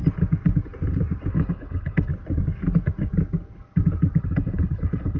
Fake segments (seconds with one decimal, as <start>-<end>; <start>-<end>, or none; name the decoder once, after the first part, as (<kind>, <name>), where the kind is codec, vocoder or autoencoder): 1.3-2.1 (codec, HILCodec); 4.2-5.2